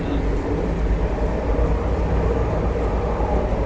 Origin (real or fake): real